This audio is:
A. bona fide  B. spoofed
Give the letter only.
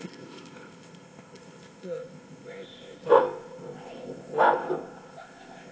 B